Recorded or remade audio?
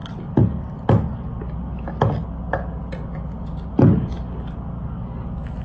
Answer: recorded